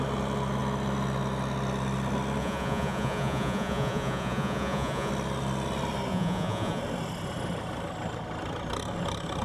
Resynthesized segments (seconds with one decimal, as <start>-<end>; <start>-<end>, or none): 2.4-5.1; 6.1-6.8